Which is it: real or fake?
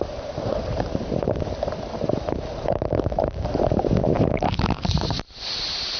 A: fake